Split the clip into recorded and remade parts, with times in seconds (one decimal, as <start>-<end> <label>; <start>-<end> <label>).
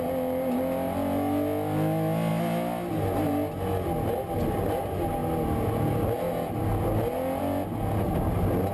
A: 0.0-8.7 recorded